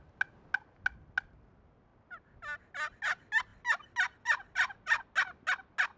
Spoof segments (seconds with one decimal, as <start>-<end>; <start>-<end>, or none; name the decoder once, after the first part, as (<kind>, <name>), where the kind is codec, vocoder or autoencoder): none